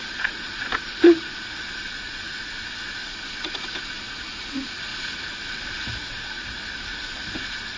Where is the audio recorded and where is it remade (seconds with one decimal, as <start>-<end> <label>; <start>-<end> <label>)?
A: 0.0-7.8 remade